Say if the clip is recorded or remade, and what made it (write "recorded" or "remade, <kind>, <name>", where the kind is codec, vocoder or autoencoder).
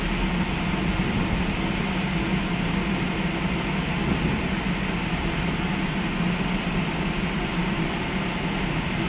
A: recorded